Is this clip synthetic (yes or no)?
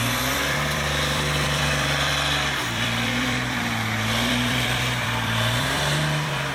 yes